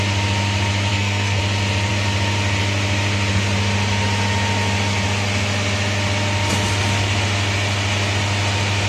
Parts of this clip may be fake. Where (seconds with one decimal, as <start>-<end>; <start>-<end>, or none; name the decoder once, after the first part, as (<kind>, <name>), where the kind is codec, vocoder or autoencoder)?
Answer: 0.9-1.4 (codec, SNAC)